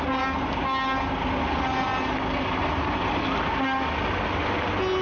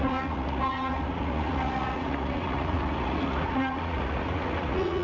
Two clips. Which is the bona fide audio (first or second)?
first